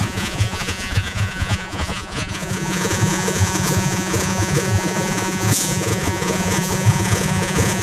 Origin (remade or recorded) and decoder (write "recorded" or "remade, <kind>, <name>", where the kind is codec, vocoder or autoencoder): remade, vocoder, Vocos